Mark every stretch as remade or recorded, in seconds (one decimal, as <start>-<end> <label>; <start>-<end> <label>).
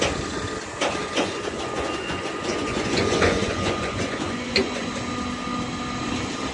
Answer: 0.0-1.0 recorded; 1.0-4.9 remade; 4.9-6.5 recorded